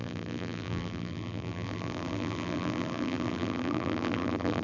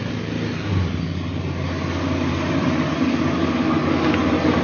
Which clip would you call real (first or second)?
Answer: second